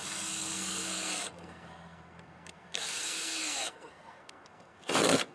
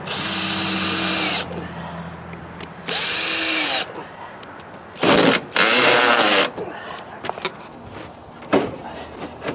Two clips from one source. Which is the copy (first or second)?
first